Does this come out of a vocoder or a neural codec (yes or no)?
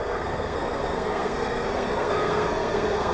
yes